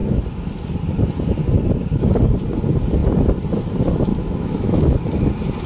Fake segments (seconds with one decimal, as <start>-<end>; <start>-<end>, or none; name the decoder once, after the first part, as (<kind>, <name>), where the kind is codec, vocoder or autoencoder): 4.1-5.0 (autoencoder, DAC-VAE)